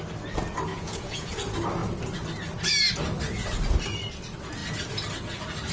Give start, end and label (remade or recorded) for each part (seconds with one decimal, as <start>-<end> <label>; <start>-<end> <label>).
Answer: 0.0-0.7 recorded; 0.7-1.3 remade; 1.3-5.7 recorded